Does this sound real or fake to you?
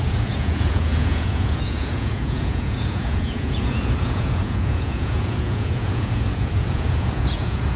fake